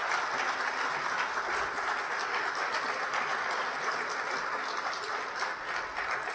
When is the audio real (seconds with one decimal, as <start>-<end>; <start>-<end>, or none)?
0.0-6.3